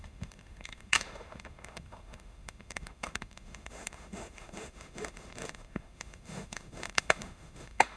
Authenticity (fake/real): fake